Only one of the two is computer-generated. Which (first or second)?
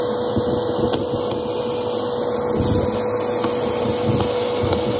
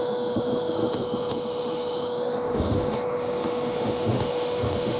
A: second